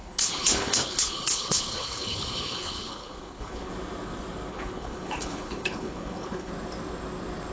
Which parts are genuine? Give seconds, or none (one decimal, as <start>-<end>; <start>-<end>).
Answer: 3.7-4.5; 6.5-7.5